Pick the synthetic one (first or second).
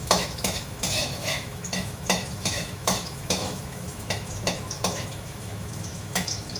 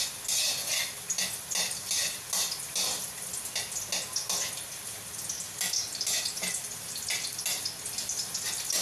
first